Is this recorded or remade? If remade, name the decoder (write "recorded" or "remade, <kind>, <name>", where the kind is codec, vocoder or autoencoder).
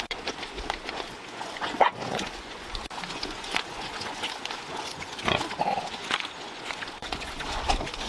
remade, vocoder, Vocos